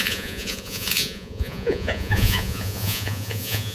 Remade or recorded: remade